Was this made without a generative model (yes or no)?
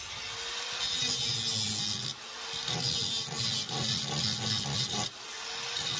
yes